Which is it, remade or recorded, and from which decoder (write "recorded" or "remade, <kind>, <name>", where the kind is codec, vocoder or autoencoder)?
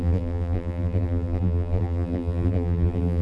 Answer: remade, vocoder, BigVGAN v2